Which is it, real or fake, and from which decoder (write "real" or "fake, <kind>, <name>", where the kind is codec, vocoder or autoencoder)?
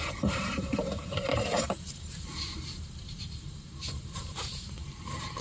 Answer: fake, vocoder, BigVGAN v2